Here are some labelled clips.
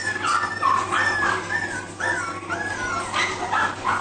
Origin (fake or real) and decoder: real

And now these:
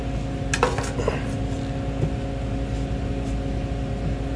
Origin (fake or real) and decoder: real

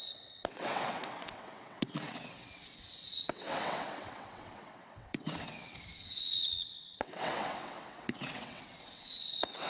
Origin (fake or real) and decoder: fake, vocoder, WaveNeXt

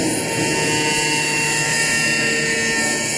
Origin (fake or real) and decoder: real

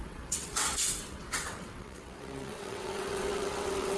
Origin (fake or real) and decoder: fake, vocoder, WaveNeXt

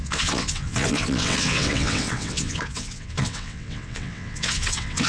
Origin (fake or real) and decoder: fake, vocoder, WaveNeXt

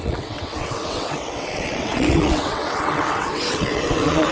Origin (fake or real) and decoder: fake, vocoder, WaveNeXt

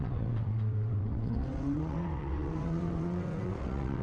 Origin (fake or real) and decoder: fake, vocoder, WaveNeXt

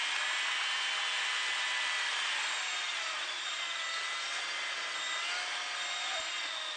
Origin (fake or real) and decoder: real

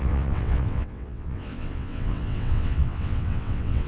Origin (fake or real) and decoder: fake, vocoder, WaveNeXt